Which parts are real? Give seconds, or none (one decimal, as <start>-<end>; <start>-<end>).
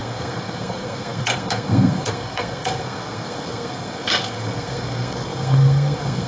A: none